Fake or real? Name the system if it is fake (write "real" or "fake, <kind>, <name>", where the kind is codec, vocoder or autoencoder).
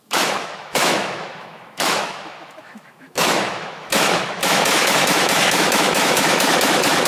fake, autoencoder, DAC-VAE